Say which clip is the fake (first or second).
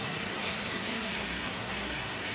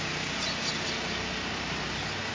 first